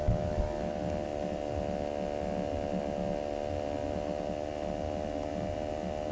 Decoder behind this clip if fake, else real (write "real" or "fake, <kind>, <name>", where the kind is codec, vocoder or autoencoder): real